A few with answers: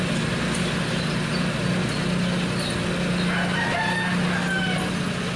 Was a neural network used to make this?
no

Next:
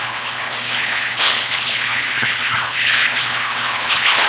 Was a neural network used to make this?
yes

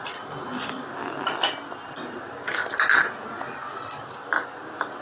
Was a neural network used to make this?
no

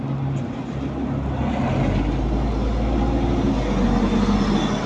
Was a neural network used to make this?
no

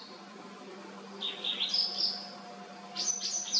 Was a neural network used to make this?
no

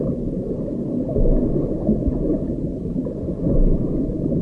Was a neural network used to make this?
no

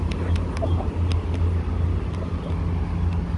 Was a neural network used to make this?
no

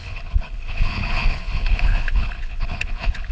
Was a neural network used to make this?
yes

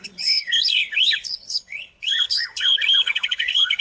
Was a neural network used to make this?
yes